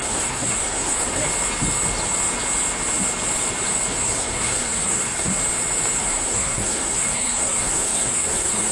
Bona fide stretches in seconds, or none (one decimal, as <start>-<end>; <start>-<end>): 1.2-3.9; 5.3-6.0